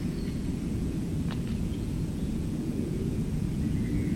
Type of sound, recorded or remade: remade